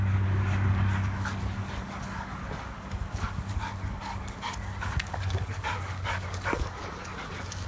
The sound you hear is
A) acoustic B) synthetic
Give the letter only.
B